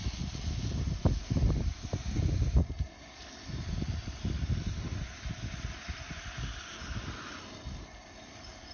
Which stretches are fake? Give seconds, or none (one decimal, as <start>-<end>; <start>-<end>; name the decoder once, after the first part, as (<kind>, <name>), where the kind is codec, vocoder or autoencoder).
none